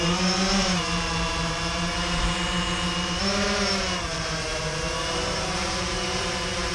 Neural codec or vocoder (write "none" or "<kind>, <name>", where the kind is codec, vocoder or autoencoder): vocoder, BigVGAN v2